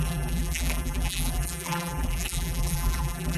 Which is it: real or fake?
fake